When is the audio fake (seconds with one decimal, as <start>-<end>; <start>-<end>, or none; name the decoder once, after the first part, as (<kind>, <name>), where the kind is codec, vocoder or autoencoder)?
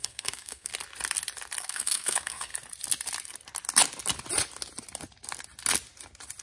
0.0-0.7 (codec, SNAC); 1.6-2.5